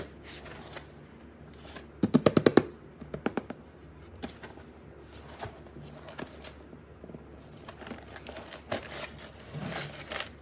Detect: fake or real real